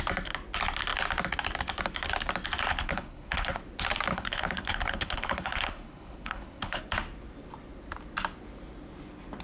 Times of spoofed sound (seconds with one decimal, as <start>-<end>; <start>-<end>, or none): 2.7-3.6; 4.1-6.8